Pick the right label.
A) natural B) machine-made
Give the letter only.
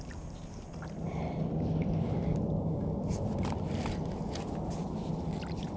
A